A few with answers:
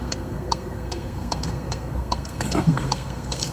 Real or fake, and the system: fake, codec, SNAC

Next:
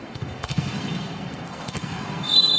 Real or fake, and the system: fake, codec, SNAC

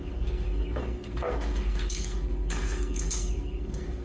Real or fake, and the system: fake, codec, SNAC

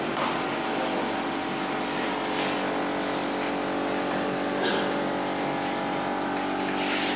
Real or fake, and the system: real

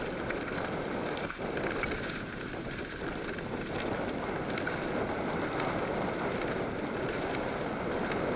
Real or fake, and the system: real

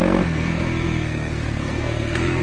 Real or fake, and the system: fake, codec, SNAC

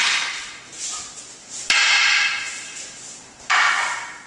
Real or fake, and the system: real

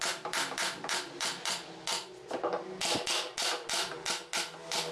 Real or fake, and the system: real